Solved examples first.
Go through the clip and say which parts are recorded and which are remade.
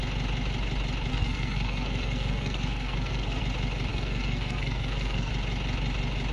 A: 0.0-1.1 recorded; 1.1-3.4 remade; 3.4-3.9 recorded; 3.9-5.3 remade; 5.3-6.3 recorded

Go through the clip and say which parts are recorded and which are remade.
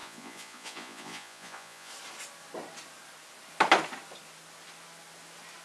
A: 0.0-1.9 remade; 1.9-5.6 recorded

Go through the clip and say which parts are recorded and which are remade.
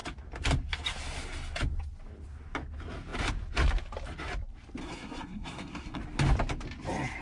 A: 0.0-4.8 recorded; 4.8-6.0 remade; 6.0-7.2 recorded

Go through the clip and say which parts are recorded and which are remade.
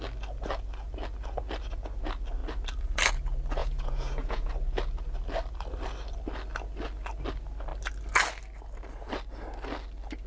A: 0.0-3.6 recorded; 3.6-4.5 remade; 4.5-10.3 recorded